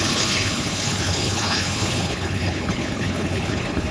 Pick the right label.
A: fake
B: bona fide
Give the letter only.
A